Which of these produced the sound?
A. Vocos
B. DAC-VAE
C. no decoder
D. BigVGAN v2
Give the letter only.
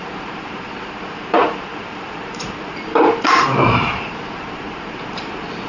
D